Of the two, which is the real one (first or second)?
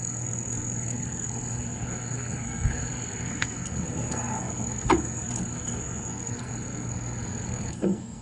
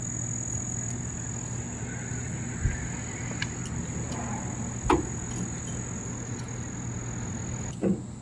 second